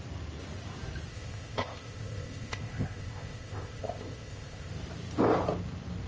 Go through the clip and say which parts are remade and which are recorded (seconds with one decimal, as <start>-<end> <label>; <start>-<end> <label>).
0.0-1.1 recorded; 1.1-4.7 remade; 4.7-6.1 recorded